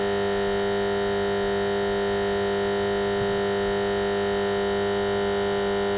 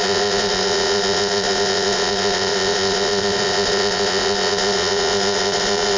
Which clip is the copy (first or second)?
second